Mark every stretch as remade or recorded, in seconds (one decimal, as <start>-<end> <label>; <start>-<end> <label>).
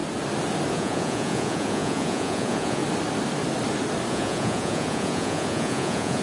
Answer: 0.0-0.7 recorded; 0.7-2.8 remade; 2.8-4.1 recorded; 4.1-6.2 remade